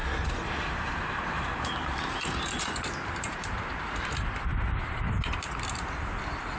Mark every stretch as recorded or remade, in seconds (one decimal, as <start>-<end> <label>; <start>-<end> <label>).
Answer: 0.0-3.7 remade; 3.7-4.5 recorded; 4.5-5.1 remade; 5.1-6.6 recorded